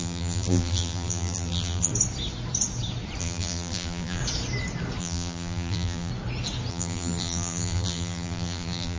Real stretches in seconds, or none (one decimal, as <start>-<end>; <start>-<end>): 1.9-3.2; 4.2-5.0; 6.1-6.7